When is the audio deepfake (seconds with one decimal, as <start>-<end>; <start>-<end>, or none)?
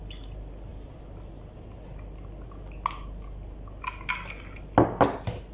0.7-1.3